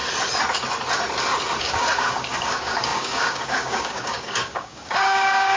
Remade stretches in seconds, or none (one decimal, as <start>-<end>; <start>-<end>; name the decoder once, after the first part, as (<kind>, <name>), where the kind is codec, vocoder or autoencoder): 1.6-5.6 (codec, DAC)